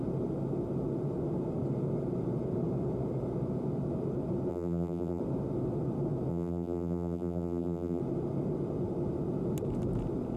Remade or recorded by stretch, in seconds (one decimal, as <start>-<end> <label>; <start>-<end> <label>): 0.0-4.5 recorded; 4.5-5.2 remade; 5.2-6.3 recorded; 6.3-8.0 remade; 8.0-10.4 recorded